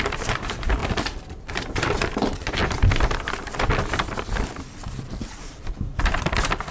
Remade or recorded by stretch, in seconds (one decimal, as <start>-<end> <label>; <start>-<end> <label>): 0.0-2.6 remade; 2.6-5.0 recorded; 5.0-5.9 remade; 5.9-6.7 recorded